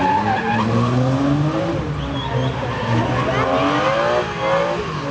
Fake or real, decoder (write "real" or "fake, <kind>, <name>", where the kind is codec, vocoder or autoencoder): real